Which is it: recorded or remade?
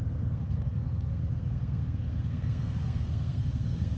remade